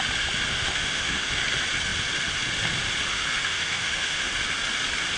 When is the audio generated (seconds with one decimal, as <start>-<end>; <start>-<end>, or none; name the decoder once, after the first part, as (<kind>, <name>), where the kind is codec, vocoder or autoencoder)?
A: 0.5-1.4 (autoencoder, DAC-VAE); 3.1-4.3

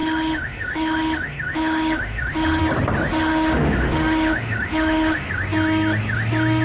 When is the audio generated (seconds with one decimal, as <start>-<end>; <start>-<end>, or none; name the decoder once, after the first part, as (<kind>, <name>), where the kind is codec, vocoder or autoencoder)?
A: 0.0-2.6 (autoencoder, DAC-VAE); 3.1-5.3